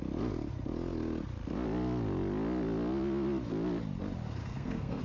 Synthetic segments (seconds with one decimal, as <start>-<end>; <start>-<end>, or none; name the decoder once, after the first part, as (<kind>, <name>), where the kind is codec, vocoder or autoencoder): 4.4-5.0 (codec, SNAC)